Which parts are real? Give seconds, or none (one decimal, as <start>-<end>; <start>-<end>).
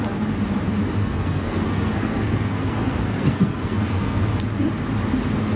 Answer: 0.0-1.0; 4.2-5.6